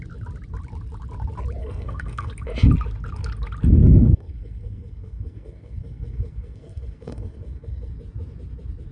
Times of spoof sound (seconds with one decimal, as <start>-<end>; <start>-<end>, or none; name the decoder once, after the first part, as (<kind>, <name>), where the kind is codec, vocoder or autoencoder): 1.6-2.3 (codec, SNAC); 3.8-7.9